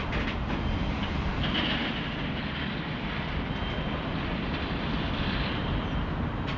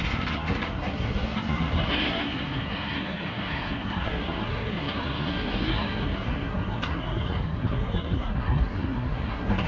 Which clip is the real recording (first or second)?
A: first